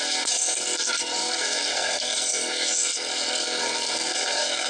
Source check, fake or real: fake